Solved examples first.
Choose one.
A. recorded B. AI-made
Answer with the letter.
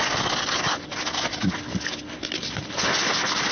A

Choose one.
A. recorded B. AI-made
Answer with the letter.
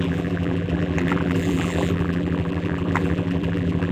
B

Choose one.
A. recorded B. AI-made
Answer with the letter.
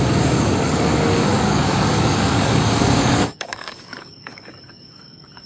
B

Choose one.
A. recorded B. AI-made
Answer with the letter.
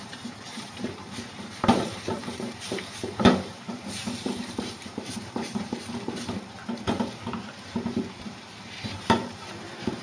B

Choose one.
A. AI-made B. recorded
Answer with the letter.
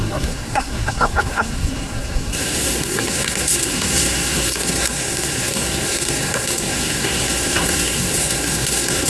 A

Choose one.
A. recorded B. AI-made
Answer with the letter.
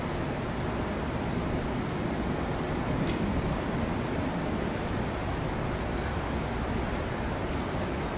A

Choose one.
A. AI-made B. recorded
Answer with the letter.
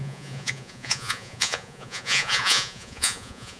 A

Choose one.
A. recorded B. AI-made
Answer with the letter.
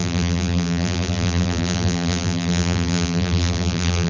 B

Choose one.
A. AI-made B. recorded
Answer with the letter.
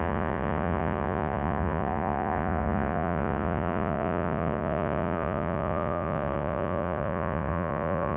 A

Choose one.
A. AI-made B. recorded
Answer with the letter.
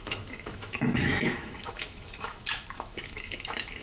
A